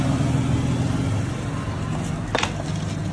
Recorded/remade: recorded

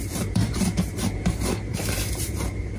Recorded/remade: remade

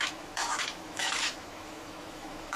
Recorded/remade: remade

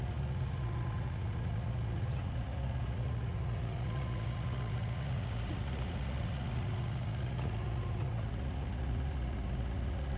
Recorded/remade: remade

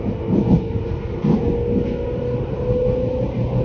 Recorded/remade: recorded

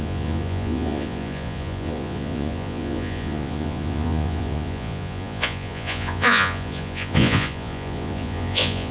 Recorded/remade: remade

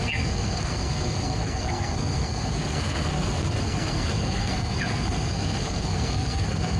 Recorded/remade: remade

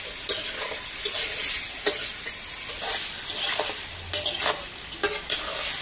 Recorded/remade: recorded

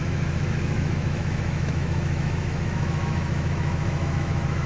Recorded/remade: remade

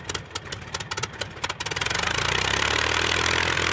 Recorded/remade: recorded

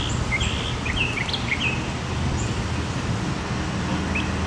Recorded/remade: recorded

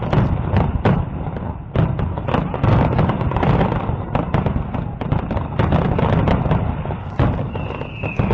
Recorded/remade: recorded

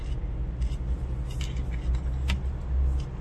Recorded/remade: recorded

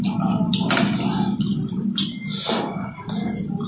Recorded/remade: recorded